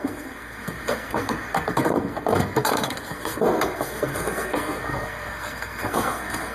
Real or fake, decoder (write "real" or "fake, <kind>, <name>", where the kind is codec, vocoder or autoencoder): fake, codec, SNAC